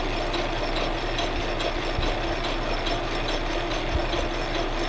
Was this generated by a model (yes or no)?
no